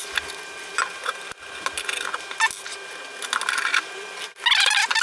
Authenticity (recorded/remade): recorded